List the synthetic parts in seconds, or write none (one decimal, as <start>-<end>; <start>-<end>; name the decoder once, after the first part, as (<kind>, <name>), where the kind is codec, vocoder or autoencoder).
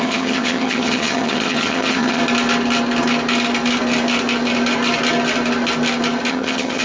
0.0-2.2 (vocoder, HiFi-GAN); 6.3-6.8